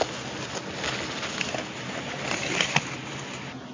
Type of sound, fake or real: real